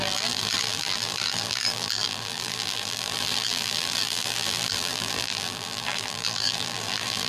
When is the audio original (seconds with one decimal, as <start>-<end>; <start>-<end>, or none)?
none